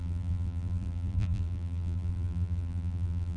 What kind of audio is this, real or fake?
fake